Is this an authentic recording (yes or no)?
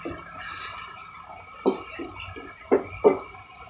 yes